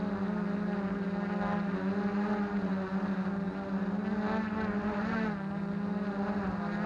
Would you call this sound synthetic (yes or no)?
no